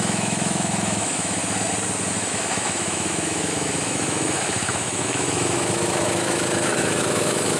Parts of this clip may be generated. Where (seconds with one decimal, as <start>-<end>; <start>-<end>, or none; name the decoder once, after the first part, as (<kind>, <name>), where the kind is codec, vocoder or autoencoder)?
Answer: 0.0-1.4 (autoencoder, DAC-VAE); 2.1-7.6